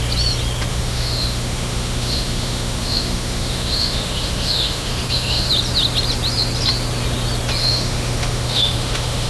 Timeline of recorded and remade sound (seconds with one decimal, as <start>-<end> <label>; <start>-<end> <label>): 0.0-0.7 recorded; 0.7-5.5 remade; 5.5-7.6 recorded; 7.6-9.3 remade